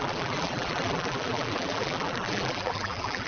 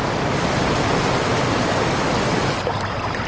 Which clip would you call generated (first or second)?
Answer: first